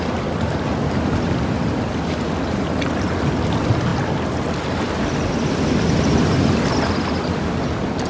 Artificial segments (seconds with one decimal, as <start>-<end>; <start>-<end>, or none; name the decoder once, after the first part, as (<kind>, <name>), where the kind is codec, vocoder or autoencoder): none